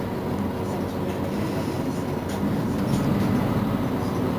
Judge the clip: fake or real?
real